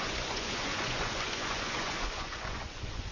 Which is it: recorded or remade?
remade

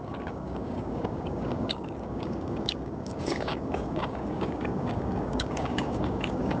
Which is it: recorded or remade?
remade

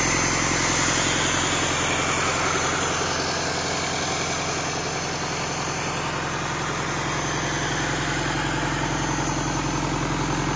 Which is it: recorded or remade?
recorded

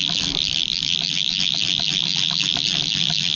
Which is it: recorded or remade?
recorded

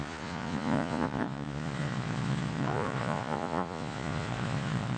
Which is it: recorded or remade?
remade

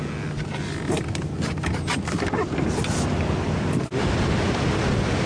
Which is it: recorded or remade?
recorded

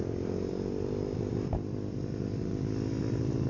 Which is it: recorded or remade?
recorded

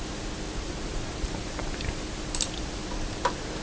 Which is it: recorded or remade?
recorded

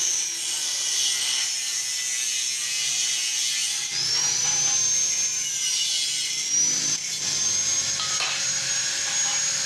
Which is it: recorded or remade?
recorded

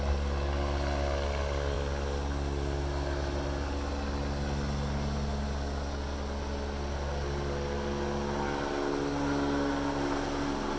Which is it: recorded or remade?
recorded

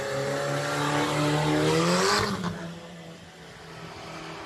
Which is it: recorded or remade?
recorded